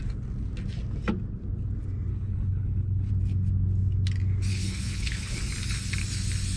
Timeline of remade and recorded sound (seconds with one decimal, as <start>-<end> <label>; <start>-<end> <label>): 0.0-2.1 recorded; 2.1-3.1 remade; 3.1-4.5 recorded; 4.5-5.4 remade; 5.4-6.6 recorded